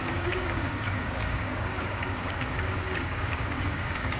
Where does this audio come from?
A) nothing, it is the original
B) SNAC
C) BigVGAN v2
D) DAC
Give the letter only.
D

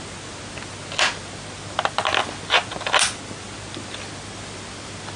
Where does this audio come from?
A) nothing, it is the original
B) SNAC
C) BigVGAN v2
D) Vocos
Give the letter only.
A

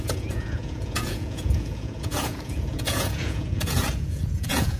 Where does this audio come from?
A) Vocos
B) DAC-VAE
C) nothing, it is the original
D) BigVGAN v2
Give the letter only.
A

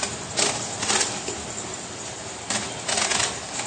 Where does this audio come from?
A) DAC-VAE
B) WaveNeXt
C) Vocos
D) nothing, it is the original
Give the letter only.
D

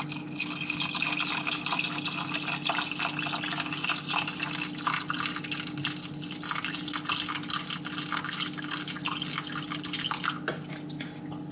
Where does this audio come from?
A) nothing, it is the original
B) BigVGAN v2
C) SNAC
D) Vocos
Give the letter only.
A